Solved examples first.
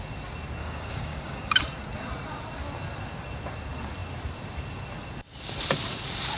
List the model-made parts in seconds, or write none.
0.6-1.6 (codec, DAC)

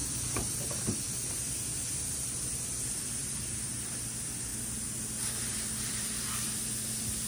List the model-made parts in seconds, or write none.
0.0-4.5 (vocoder, BigVGAN v2); 5.3-7.3

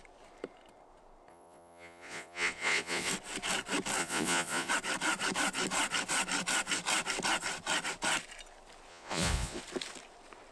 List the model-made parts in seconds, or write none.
1.3-3.1 (vocoder, Vocos); 4.0-4.7; 8.9-9.6